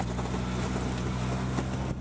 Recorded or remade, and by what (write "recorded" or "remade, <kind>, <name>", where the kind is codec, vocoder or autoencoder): recorded